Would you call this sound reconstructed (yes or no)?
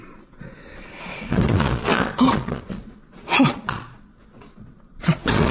yes